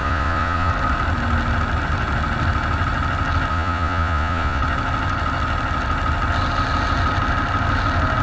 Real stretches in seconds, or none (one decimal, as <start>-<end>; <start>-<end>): 0.7-3.5; 4.6-8.2

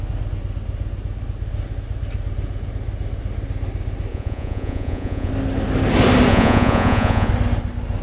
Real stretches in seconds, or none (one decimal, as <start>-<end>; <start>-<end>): 0.0-4.1; 5.3-6.3; 7.3-8.0

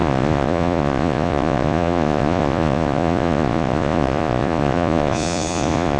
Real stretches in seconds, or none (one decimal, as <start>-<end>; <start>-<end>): none

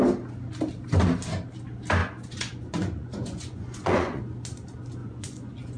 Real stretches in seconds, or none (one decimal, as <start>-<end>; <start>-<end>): 0.0-2.0; 4.2-5.0